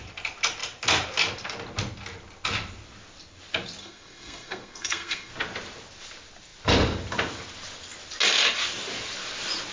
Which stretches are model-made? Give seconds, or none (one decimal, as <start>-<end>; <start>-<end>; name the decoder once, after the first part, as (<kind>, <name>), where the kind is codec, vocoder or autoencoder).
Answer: 3.8-5.3 (codec, SNAC)